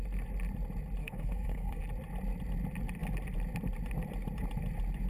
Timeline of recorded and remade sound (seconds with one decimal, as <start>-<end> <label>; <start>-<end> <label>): 0.0-1.0 recorded; 1.0-1.8 remade; 1.8-5.1 recorded

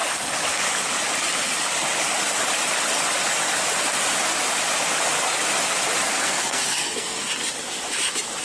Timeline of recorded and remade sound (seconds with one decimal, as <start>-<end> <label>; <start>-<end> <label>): 0.0-6.0 recorded; 6.0-7.3 remade; 7.3-8.4 recorded

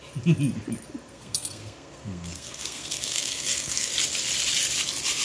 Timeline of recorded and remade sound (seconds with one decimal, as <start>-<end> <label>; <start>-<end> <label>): 0.0-1.1 recorded; 1.1-3.9 remade; 3.9-5.2 recorded

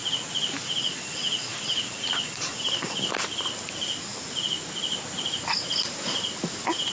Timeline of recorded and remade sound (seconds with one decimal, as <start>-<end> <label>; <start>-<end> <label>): 0.0-6.9 recorded

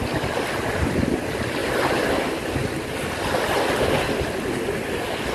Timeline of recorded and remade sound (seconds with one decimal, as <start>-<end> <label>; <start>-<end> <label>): 0.0-5.3 recorded

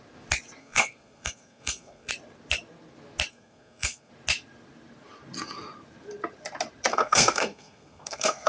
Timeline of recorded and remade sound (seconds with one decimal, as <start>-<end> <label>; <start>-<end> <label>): 0.0-0.6 recorded; 0.6-2.1 remade; 2.1-3.3 recorded; 3.3-4.1 remade; 4.1-6.9 recorded; 6.9-8.5 remade